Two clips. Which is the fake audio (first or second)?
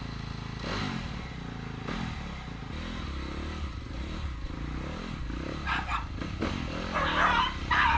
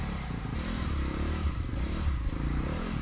second